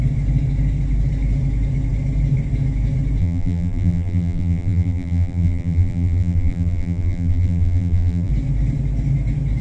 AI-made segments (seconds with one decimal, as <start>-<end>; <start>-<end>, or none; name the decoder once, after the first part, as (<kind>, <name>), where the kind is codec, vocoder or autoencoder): 3.2-8.3 (vocoder, BigVGAN v2)